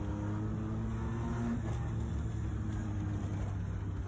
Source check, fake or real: real